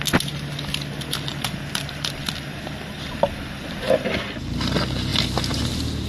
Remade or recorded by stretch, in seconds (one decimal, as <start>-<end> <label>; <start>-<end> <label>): 0.0-1.3 recorded; 1.3-4.1 remade; 4.1-6.1 recorded